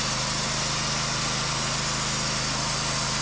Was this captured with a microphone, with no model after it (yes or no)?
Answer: yes